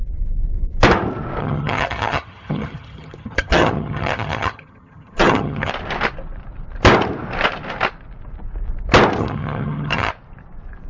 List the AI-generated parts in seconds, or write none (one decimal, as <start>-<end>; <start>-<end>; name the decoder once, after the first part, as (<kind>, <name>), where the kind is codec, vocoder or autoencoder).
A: 1.4-5.7 (vocoder, HiFi-GAN); 9.2-10.1

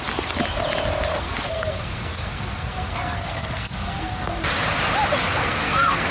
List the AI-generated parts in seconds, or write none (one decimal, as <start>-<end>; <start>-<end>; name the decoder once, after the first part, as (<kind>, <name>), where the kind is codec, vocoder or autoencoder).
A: 1.1-4.4 (codec, SNAC); 5.3-6.1

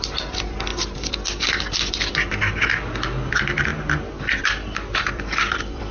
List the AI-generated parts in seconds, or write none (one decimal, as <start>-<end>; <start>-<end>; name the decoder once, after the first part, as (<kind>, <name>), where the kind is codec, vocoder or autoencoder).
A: 0.0-0.7 (vocoder, BigVGAN v2); 1.9-3.7; 4.4-5.9

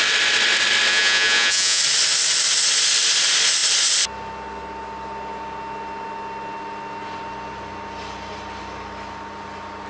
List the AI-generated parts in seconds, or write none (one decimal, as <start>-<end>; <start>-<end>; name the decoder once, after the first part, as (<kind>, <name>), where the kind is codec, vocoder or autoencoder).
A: 0.9-1.8 (vocoder, Vocos)

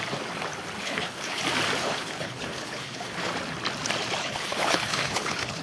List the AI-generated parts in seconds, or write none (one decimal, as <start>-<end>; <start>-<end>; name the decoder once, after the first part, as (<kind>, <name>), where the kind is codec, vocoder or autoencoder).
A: 0.8-1.4 (codec, HILCodec); 1.8-3.3; 4.2-5.6

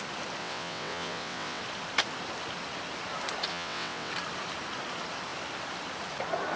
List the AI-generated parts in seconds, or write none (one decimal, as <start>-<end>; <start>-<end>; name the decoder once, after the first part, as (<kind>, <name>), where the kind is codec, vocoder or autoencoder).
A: 0.4-1.6 (vocoder, WaveNeXt); 3.5-4.1